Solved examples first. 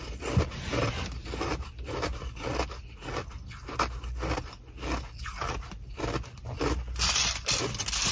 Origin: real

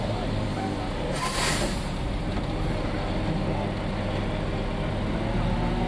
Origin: real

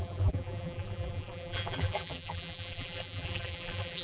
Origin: fake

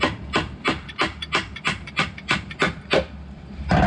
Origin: fake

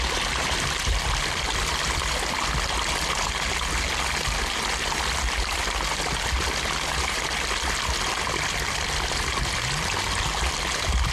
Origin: real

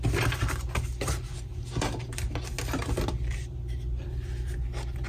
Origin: real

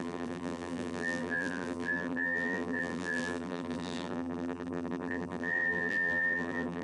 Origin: fake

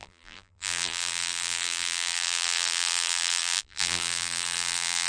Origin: fake